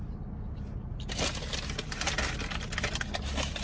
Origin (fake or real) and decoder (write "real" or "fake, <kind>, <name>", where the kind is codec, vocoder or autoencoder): real